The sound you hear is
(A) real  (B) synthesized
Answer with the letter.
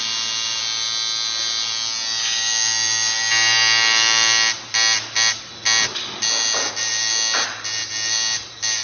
A